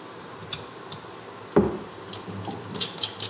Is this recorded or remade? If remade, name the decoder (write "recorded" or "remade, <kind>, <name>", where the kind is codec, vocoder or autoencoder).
recorded